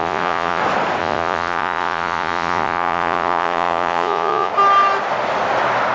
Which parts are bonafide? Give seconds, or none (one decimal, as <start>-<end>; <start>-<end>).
0.6-1.0; 4.5-5.9